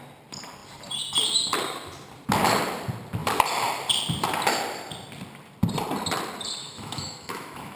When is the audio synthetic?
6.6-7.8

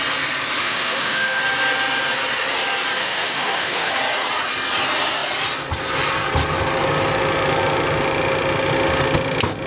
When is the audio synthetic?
0.6-1.4; 3.0-3.9